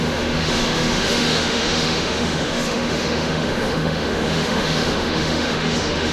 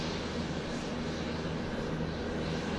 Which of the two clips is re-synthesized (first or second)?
first